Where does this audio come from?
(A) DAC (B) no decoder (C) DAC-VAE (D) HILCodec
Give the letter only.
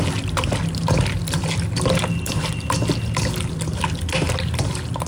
B